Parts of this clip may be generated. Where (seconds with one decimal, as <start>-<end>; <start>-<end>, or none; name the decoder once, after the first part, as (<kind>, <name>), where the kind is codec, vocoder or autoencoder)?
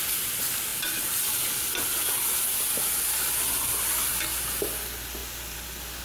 none